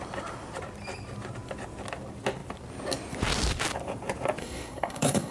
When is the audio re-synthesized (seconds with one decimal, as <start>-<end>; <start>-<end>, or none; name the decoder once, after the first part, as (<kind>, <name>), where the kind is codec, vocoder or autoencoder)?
4.4-5.3 (codec, SNAC)